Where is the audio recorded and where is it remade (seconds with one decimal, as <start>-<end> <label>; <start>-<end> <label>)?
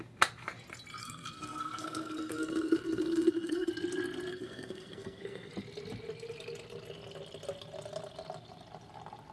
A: 0.0-1.0 recorded; 1.0-3.7 remade; 3.7-4.3 recorded; 4.3-5.5 remade; 5.5-9.3 recorded